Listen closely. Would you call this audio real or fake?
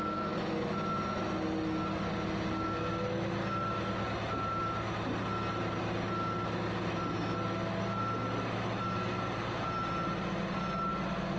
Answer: real